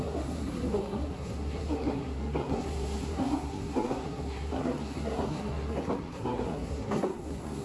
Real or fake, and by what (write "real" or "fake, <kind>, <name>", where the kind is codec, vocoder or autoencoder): fake, codec, SNAC